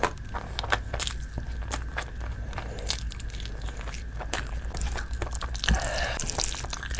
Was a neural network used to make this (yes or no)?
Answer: no